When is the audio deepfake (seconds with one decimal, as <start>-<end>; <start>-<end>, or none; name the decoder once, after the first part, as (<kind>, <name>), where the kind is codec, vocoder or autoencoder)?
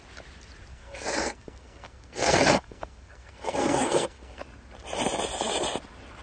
0.7-4.4 (codec, SNAC)